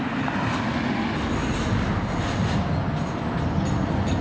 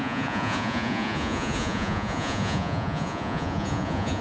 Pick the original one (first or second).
first